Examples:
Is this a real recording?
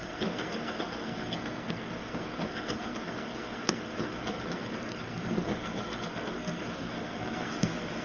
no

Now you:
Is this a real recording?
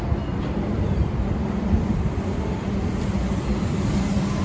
yes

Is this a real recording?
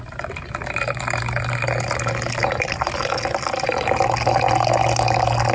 yes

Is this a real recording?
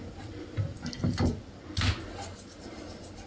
yes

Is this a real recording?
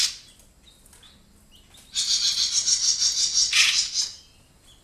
yes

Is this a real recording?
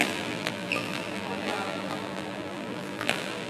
no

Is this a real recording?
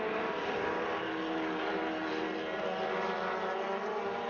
yes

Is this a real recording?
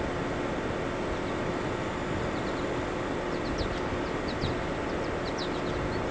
yes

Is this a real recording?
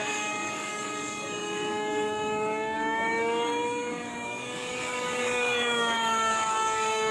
no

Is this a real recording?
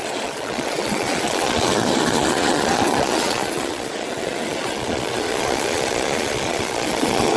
no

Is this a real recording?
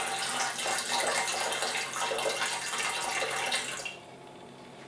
yes